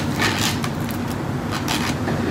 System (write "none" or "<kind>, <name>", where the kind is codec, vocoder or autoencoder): none